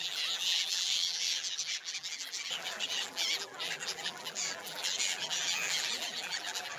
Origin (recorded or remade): remade